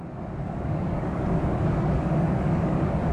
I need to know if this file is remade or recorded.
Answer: remade